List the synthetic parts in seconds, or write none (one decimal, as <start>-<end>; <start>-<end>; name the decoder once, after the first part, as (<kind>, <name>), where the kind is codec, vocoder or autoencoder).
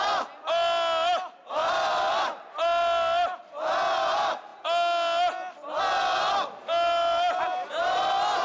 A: none